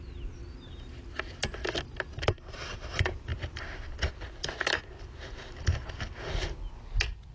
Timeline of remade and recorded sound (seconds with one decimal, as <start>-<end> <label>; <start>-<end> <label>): 0.0-7.3 recorded